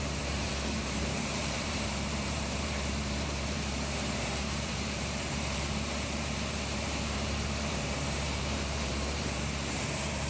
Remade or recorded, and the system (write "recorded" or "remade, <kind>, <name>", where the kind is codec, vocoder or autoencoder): remade, vocoder, BigVGAN v2